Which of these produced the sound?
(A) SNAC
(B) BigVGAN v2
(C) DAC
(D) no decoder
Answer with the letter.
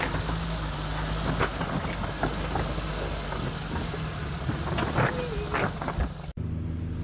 D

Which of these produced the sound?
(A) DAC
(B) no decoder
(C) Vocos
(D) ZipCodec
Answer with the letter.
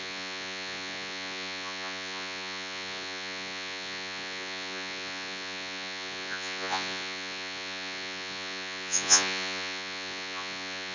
C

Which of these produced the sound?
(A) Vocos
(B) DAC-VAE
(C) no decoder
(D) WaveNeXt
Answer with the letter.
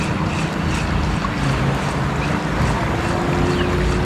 C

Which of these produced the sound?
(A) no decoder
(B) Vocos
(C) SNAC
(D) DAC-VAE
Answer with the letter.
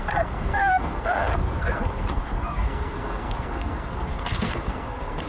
C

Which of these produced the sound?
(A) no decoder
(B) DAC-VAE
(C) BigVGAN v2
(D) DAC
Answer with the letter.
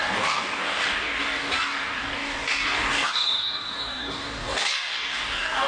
D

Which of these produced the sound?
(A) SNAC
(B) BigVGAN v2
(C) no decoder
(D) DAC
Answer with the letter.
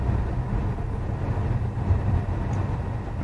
C